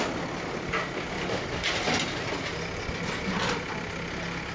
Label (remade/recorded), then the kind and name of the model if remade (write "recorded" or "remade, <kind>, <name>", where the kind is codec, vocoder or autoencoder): recorded